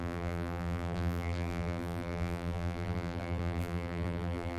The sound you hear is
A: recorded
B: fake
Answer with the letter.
B